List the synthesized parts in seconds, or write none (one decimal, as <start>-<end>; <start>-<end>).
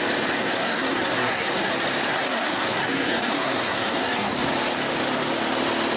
0.4-1.7; 2.1-4.3